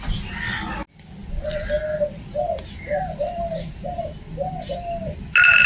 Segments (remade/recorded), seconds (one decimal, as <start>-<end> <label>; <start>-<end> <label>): 0.0-1.2 recorded; 1.2-2.3 remade; 2.3-2.9 recorded; 2.9-3.7 remade; 3.7-5.7 recorded